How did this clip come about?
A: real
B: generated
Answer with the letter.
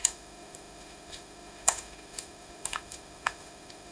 B